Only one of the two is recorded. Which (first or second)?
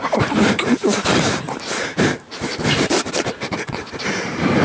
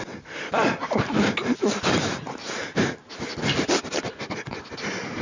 second